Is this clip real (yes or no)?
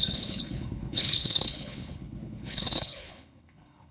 no